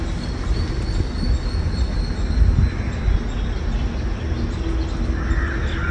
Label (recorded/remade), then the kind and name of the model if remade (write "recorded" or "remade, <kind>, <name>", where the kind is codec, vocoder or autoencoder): recorded